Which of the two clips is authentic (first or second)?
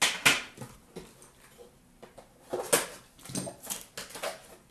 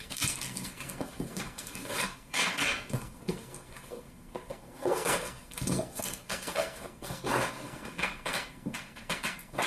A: first